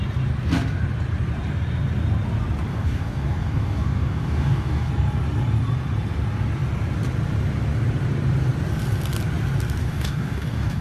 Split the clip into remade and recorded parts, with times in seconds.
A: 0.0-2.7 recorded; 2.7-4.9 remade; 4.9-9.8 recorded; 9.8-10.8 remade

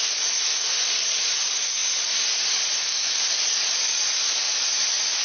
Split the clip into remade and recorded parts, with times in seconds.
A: 0.0-5.2 recorded

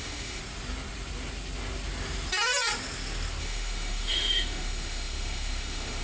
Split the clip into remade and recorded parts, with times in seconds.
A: 0.0-0.4 remade; 0.4-3.4 recorded; 3.4-6.0 remade

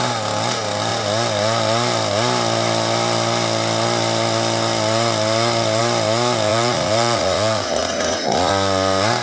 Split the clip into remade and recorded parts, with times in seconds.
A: 0.0-6.5 recorded; 6.5-8.5 remade; 8.5-9.2 recorded

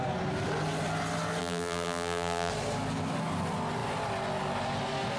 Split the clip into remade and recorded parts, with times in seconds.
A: 0.0-1.4 recorded; 1.4-2.5 remade; 2.5-5.2 recorded

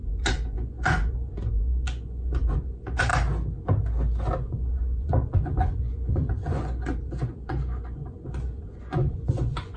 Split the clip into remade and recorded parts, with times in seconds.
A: 0.0-3.1 remade; 3.1-4.4 recorded; 4.4-9.8 remade